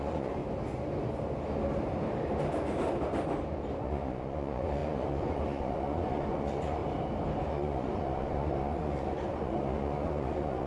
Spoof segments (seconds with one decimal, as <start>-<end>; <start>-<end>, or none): 0.0-0.4; 3.8-6.8; 7.5-10.7